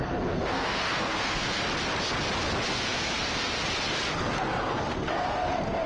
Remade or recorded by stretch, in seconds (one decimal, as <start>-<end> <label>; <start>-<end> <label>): 0.0-1.6 remade; 1.6-2.7 recorded; 2.7-3.6 remade; 3.6-4.1 recorded; 4.1-5.9 remade

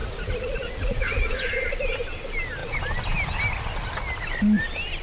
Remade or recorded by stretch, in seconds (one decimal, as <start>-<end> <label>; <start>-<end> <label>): 0.0-1.5 remade; 1.5-5.0 recorded

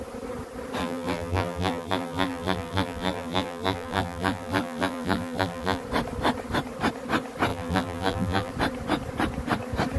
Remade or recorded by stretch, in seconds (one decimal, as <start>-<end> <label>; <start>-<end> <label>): 0.0-0.8 recorded; 0.8-5.8 remade; 5.8-7.5 recorded; 7.5-8.5 remade; 8.5-10.0 recorded

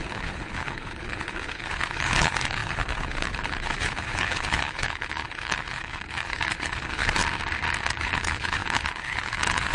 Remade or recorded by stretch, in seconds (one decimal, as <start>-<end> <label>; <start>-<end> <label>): 0.0-7.2 remade; 7.2-7.8 recorded; 7.8-9.7 remade